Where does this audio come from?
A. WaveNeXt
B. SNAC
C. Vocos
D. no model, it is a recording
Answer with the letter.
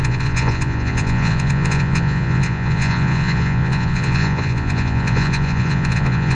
C